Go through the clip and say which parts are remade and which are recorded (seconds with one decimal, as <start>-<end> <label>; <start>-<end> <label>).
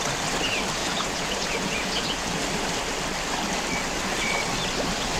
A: 0.0-0.8 recorded; 0.8-2.4 remade; 2.4-5.2 recorded